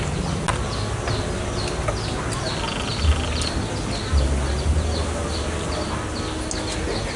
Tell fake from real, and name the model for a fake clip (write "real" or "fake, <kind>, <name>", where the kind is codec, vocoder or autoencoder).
real